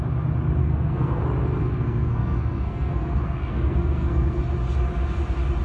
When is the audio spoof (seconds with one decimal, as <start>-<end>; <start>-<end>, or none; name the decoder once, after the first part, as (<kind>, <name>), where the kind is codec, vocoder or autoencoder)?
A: 0.6-1.2 (codec, SNAC); 1.6-4.4